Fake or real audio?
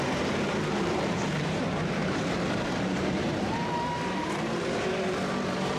fake